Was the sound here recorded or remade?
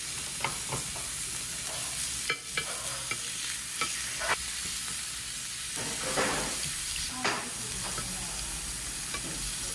recorded